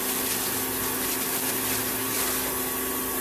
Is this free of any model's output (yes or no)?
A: yes